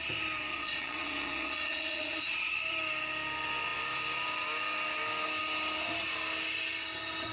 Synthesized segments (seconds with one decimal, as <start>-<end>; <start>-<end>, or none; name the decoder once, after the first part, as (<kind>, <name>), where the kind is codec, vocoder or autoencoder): 0.5-2.5 (vocoder, Vocos)